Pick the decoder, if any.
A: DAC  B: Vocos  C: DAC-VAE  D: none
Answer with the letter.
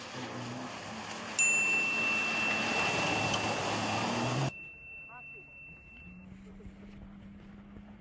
D